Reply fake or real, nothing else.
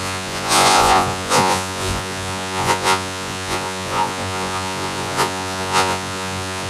fake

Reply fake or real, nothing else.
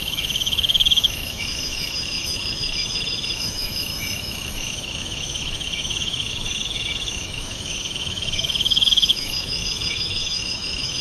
fake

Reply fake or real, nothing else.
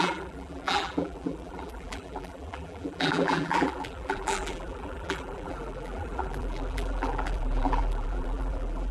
fake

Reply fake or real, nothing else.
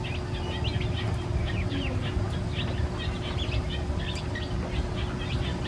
real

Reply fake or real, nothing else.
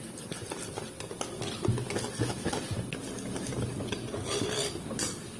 real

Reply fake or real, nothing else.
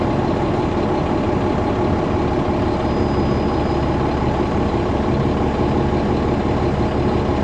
real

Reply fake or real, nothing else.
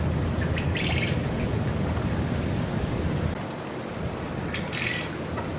real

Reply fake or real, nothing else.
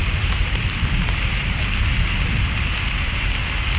real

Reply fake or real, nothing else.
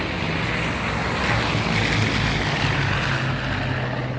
real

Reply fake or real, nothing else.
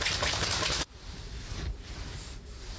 real